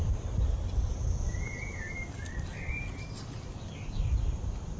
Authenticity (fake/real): real